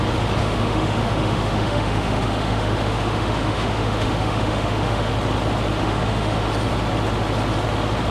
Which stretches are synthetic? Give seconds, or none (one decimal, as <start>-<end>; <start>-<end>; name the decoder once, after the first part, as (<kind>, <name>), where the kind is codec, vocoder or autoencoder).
0.4-5.1 (autoencoder, DAC-VAE); 5.8-6.5